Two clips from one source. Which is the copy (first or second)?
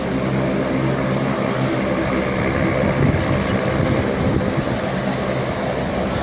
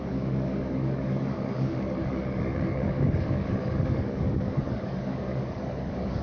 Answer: second